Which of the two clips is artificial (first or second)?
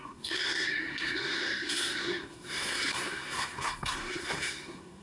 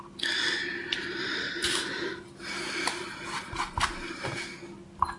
first